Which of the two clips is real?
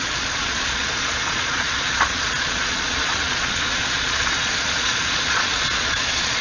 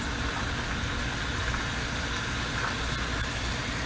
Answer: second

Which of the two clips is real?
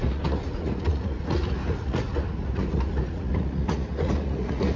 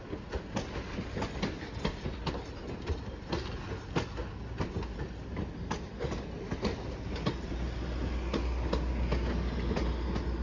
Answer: second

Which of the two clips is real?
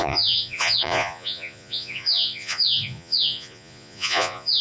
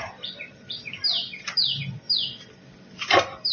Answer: second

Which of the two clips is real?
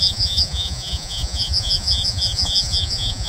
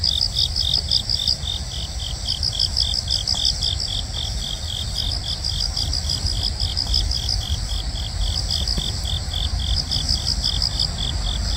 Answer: second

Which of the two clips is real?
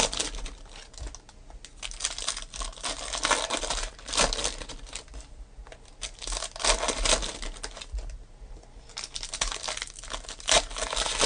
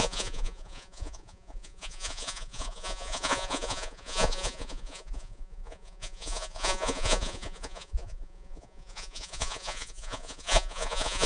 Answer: first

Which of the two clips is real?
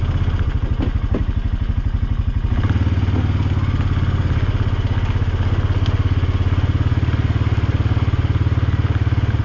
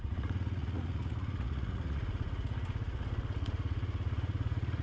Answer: first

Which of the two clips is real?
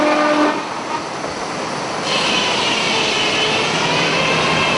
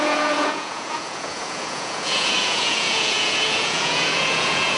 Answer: first